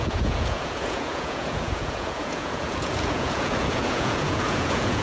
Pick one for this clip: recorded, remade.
remade